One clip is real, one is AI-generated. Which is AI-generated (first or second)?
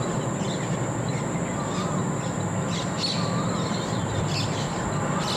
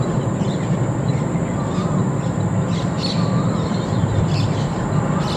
second